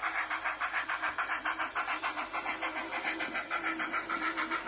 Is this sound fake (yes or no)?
no